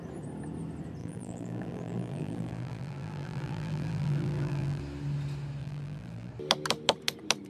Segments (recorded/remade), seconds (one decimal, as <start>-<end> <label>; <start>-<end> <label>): 0.0-1.0 recorded; 1.0-4.8 remade; 4.8-5.6 recorded; 5.6-6.3 remade; 6.3-7.5 recorded